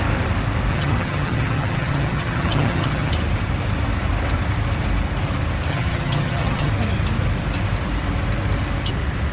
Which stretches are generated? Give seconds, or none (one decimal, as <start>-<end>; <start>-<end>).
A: 0.7-3.1; 5.7-6.7